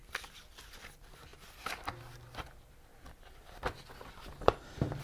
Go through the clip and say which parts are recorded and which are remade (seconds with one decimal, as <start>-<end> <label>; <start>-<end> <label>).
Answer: 0.0-0.5 remade; 0.5-2.9 recorded; 2.9-4.6 remade; 4.6-5.0 recorded